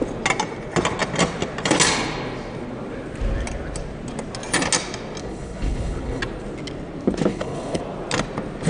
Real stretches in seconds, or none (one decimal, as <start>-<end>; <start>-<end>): 0.0-5.2; 6.2-7.3; 7.8-8.7